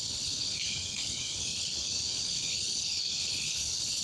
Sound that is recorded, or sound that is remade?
remade